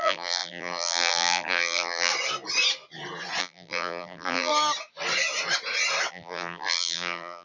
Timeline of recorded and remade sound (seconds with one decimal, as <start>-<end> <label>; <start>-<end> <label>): 0.0-2.1 remade; 2.1-3.4 recorded; 3.4-4.5 remade; 4.5-6.1 recorded; 6.1-7.4 remade